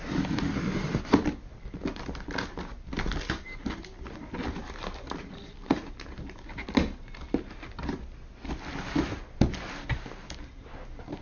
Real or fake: real